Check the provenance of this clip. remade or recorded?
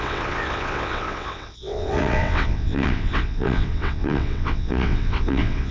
remade